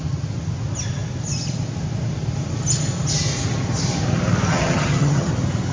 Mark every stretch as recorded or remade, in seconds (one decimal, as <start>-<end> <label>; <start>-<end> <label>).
0.0-4.5 recorded; 4.5-5.3 remade; 5.3-5.7 recorded